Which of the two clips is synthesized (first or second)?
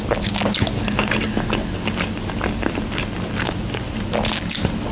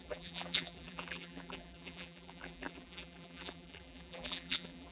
second